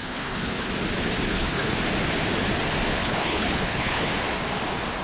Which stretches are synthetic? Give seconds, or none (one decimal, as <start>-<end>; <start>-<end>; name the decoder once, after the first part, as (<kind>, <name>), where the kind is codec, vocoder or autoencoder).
0.0-0.7 (codec, HILCodec); 1.3-1.8; 3.0-4.1

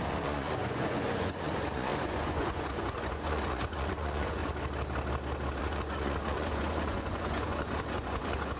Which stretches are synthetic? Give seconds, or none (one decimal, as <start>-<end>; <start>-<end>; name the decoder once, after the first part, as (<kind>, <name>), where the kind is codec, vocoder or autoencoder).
0.0-4.4 (vocoder, Vocos); 5.6-8.6

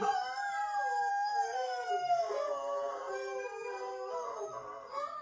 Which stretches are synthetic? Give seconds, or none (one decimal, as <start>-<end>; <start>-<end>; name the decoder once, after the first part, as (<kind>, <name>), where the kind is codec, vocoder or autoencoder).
1.1-1.9 (codec, SNAC)

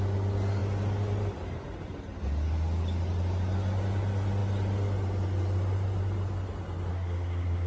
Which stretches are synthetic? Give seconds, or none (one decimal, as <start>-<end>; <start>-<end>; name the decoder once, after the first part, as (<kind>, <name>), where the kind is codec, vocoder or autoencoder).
6.9-7.7 (codec, SNAC)

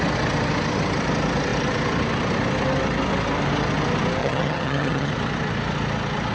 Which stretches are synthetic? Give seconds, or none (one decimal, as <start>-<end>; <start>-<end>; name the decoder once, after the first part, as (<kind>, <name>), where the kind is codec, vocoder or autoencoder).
4.2-5.1 (vocoder, HiFi-GAN)

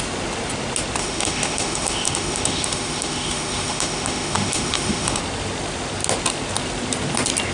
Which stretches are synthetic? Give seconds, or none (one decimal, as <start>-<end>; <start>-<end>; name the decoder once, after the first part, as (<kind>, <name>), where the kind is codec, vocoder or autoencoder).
1.0-5.2 (autoencoder, DAC-VAE)